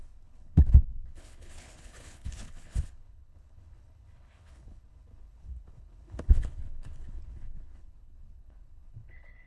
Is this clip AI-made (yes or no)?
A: yes